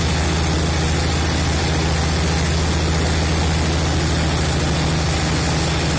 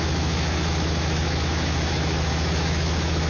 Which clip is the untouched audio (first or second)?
first